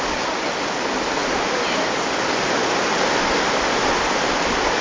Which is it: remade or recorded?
recorded